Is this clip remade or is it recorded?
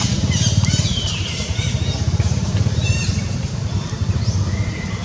remade